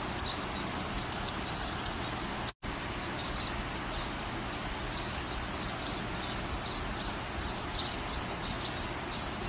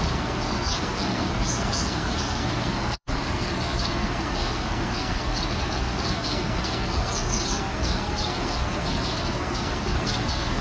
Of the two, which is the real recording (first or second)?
first